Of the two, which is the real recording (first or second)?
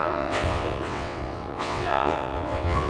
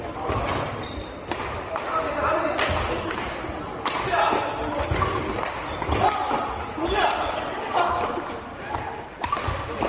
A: second